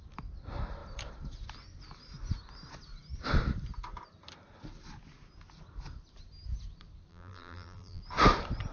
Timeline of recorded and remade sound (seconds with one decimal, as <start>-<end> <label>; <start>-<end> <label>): 0.0-7.1 recorded; 7.1-8.0 remade; 8.0-8.7 recorded